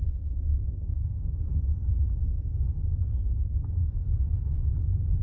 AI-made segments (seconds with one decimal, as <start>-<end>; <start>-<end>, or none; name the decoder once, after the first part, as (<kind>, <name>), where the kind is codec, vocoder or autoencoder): 0.5-1.4 (codec, SNAC)